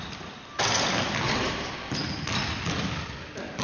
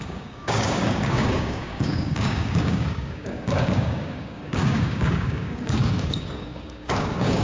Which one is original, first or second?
first